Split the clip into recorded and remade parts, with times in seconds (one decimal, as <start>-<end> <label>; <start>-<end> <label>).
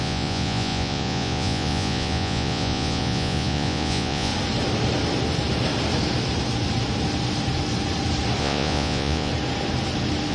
0.0-4.3 remade; 4.3-8.4 recorded; 8.4-9.3 remade; 9.3-10.3 recorded